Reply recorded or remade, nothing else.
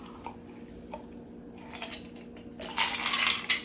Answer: recorded